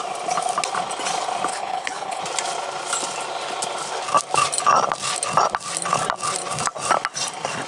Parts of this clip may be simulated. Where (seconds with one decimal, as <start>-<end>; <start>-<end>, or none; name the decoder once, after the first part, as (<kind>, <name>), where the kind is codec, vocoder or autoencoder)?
1.5-2.2 (codec, HILCodec)